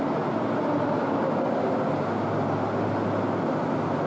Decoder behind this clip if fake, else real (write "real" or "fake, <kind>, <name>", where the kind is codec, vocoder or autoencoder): real